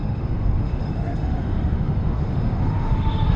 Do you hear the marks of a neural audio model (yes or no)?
yes